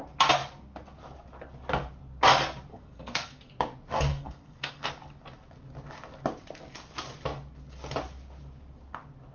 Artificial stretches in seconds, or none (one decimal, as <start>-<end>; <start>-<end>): 2.7-3.5; 4.1-4.9